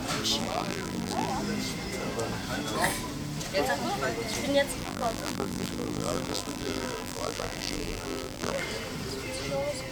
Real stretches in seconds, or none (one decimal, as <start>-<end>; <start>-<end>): 0.0-0.4; 1.3-4.8; 8.6-9.9